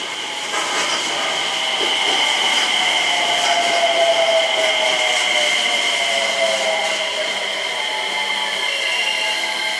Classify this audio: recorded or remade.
recorded